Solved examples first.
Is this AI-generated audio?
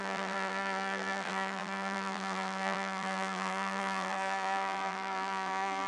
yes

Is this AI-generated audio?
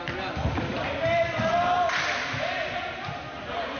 no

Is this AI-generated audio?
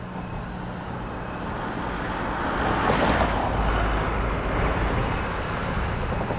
no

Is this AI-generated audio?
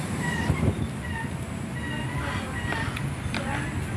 no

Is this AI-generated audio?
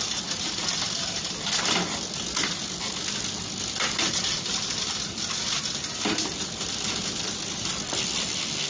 no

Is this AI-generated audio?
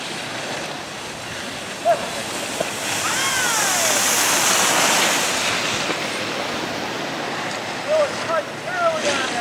no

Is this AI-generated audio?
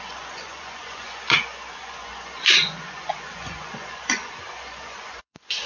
yes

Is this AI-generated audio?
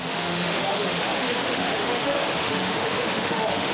yes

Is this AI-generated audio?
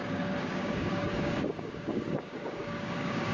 yes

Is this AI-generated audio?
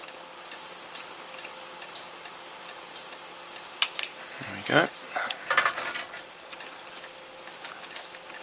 no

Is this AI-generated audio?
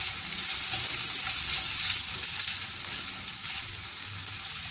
no